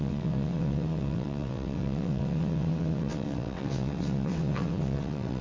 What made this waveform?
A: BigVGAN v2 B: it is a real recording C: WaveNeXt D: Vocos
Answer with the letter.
C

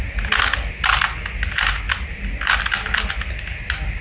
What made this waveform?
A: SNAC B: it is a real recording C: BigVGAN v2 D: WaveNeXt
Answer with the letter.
B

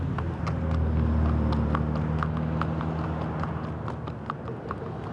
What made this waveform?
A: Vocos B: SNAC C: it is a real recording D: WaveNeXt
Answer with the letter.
C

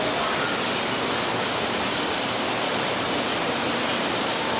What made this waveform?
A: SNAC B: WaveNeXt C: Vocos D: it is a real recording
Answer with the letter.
D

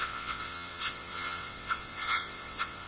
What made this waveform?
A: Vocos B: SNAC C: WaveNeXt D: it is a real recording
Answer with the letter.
C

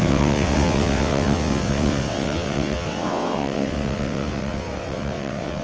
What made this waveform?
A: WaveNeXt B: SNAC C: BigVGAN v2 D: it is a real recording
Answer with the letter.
A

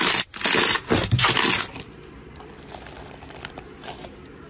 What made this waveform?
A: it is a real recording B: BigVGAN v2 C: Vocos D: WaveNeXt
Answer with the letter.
A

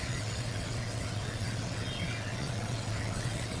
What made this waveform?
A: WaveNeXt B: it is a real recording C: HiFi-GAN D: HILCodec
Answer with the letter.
A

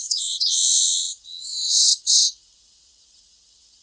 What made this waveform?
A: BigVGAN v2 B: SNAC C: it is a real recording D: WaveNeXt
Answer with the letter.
D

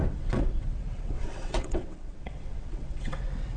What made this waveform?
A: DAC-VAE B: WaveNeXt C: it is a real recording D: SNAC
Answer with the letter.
B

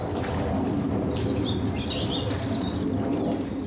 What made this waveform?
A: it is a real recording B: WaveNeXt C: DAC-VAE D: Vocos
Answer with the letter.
A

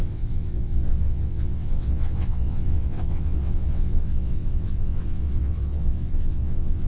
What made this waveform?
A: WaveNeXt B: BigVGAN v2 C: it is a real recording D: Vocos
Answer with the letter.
A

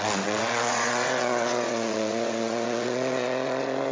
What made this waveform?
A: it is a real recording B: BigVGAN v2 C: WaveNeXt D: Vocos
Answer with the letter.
C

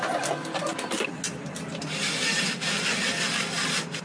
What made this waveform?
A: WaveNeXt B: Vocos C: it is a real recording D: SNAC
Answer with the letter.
C